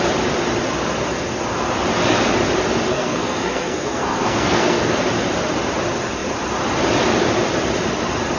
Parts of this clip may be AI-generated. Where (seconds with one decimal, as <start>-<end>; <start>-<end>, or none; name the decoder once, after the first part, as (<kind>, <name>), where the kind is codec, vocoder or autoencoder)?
2.9-5.0 (codec, SNAC)